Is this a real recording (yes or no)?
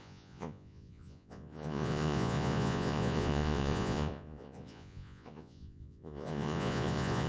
no